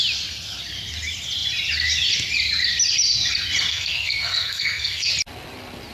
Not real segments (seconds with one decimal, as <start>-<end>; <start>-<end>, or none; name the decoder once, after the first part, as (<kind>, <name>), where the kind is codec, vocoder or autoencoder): 3.7-5.1 (codec, SNAC)